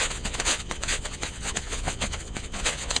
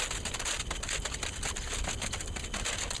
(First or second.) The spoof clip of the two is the first